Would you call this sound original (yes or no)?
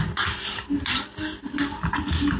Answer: yes